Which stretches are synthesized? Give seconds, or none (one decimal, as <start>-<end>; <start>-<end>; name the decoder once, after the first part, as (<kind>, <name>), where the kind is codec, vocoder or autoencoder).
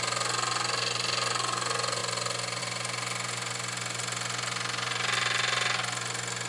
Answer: none